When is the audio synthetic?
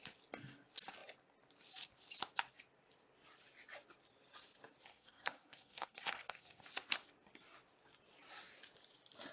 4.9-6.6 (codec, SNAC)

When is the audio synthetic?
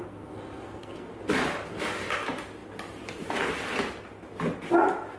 0.0-1.1 (codec, SNAC)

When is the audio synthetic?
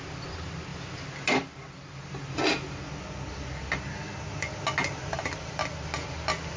none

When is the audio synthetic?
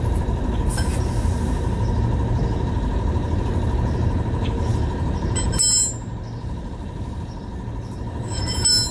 none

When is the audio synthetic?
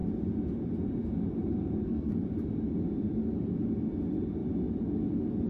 1.6-2.1 (codec, SNAC)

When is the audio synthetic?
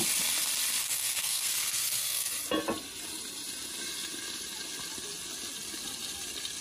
0.8-2.3 (codec, SNAC)